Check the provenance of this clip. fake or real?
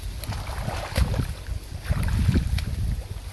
real